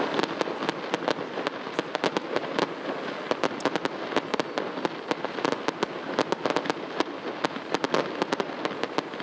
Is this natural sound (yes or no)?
yes